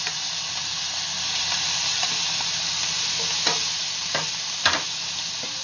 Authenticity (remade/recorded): recorded